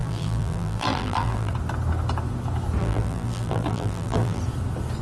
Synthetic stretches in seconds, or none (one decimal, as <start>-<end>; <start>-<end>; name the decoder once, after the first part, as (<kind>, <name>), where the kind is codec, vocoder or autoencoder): 0.0-1.5 (vocoder, BigVGAN v2); 2.8-4.4